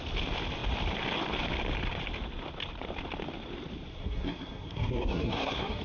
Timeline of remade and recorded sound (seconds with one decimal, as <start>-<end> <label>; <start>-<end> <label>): 0.0-3.9 recorded; 3.9-5.8 remade